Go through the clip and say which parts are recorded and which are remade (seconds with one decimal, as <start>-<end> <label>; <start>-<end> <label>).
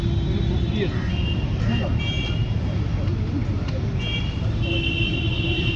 0.0-5.8 recorded